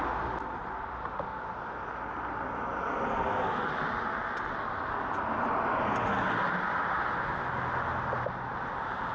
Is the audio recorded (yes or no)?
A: yes